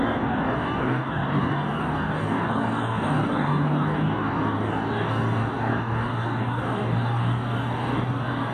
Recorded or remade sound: remade